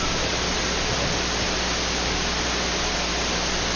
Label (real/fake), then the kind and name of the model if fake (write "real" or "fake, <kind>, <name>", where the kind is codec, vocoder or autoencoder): real